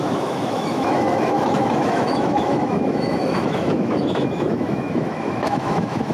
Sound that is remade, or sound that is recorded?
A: remade